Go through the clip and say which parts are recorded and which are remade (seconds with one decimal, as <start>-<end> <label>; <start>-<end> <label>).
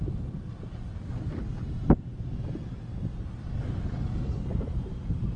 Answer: 0.0-5.4 recorded